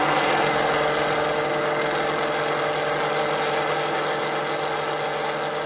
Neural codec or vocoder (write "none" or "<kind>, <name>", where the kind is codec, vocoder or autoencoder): none